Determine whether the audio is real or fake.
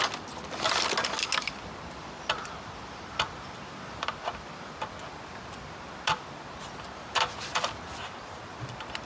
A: real